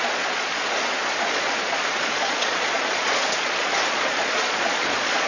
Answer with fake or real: fake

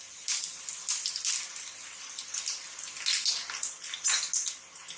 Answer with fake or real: real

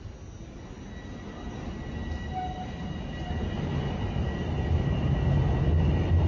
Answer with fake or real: real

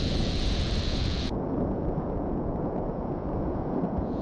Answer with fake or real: fake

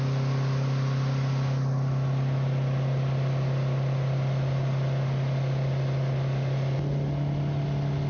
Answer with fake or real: real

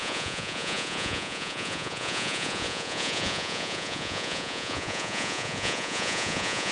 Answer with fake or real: fake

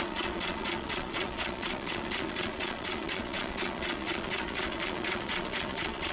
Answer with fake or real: fake